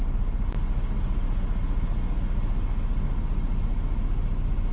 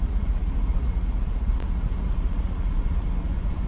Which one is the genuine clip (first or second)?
first